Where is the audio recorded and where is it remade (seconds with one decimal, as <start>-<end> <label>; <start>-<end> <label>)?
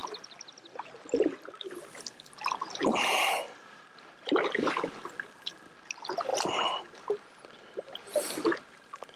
0.0-9.2 recorded